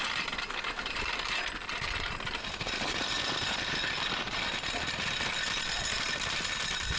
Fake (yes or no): no